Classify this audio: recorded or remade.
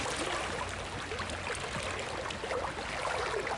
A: recorded